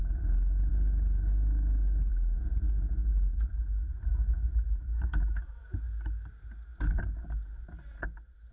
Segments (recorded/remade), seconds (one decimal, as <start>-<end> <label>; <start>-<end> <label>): 0.0-4.1 recorded; 4.1-5.6 remade; 5.6-8.5 recorded